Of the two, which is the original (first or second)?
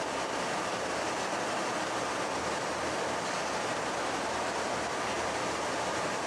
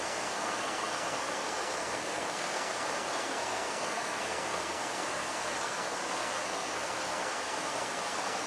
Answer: first